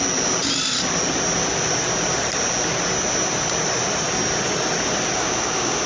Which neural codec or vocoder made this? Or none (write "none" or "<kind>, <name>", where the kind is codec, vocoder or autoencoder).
none